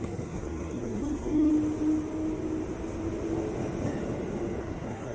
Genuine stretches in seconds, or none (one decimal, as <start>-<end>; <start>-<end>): 1.5-4.6